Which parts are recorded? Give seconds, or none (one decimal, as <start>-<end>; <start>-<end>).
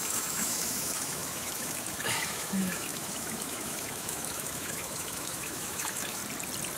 6.2-6.8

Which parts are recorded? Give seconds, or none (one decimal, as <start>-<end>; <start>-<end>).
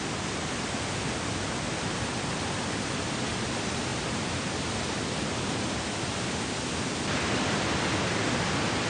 0.0-8.9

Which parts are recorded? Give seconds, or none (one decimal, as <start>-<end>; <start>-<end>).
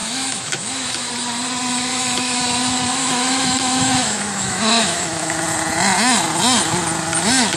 1.1-1.9; 2.4-3.0; 5.4-7.6